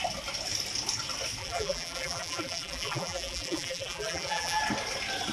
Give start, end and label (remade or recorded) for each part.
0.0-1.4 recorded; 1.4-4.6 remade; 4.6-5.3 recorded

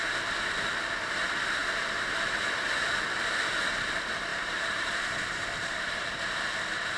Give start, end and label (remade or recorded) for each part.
0.0-1.6 recorded; 1.6-2.5 remade; 2.5-4.3 recorded; 4.3-6.4 remade; 6.4-7.0 recorded